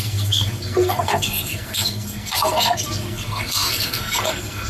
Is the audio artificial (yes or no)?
yes